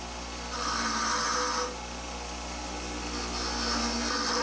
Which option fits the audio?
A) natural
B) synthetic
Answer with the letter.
A